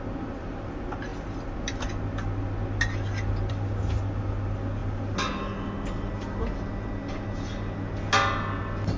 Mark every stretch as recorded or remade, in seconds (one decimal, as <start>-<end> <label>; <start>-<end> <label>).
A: 0.0-9.0 recorded